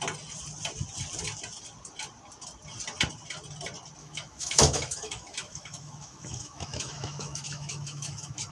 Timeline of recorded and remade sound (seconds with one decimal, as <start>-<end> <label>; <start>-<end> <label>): 0.0-4.0 recorded; 4.0-8.5 remade